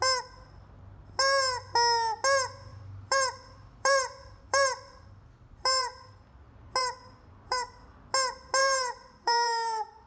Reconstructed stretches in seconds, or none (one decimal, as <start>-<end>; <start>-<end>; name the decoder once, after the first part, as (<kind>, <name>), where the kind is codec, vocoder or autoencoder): 2.7-6.1 (vocoder, BigVGAN v2); 6.8-7.8; 8.6-10.1